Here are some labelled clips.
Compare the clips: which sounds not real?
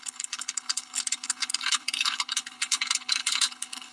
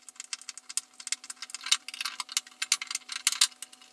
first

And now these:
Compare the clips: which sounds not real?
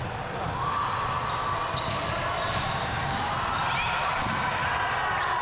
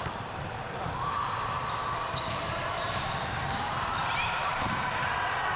second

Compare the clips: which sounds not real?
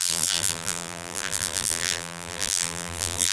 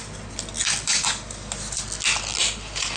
first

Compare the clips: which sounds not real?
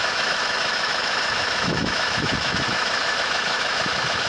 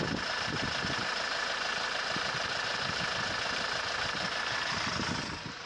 first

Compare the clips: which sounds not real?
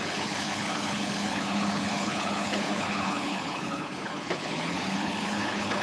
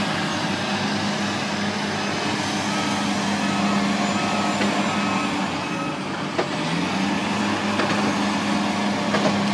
first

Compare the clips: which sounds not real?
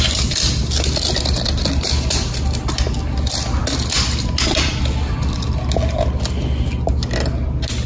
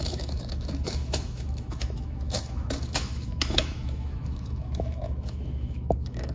second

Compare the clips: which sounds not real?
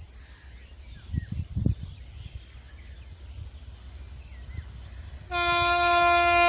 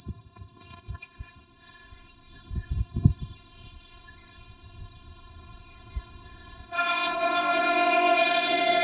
second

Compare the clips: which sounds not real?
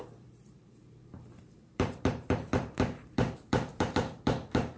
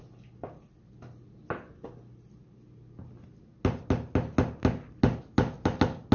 first